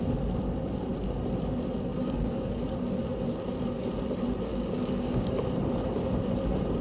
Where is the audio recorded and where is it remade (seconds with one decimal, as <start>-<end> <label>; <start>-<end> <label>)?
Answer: 0.0-1.9 recorded; 1.9-2.5 remade; 2.5-4.5 recorded; 4.5-5.4 remade; 5.4-6.8 recorded